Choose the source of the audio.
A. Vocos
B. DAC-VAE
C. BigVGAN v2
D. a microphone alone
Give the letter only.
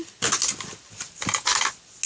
D